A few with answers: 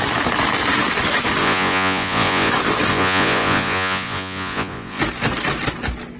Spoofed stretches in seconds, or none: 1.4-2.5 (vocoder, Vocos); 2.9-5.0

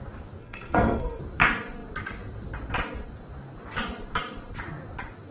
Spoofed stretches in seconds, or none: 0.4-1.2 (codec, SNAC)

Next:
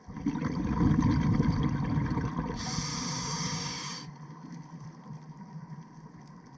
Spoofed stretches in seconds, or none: 2.9-4.1 (codec, DAC)